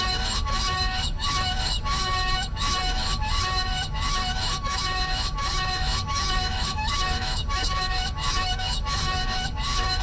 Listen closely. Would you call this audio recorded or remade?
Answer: remade